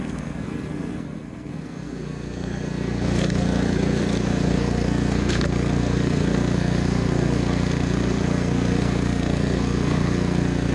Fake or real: fake